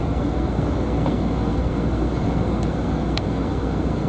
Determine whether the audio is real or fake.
fake